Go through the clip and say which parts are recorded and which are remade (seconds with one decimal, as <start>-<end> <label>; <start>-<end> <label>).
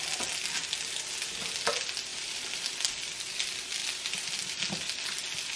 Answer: 0.0-2.1 recorded; 2.1-2.7 remade; 2.7-3.8 recorded; 3.8-4.6 remade; 4.6-5.6 recorded